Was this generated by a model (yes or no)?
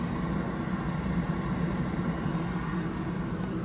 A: no